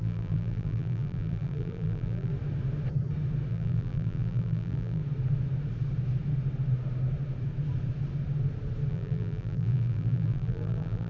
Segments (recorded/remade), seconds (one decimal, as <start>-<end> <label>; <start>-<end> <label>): 0.0-2.3 remade; 2.3-3.5 recorded; 3.5-5.0 remade; 5.0-8.9 recorded; 8.9-11.1 remade